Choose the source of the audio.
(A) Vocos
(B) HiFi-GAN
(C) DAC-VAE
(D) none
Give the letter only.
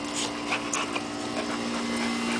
D